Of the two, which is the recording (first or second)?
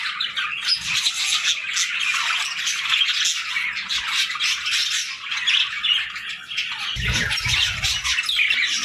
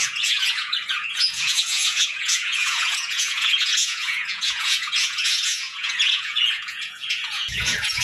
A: first